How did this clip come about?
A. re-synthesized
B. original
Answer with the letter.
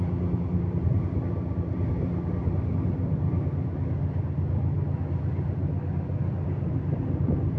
B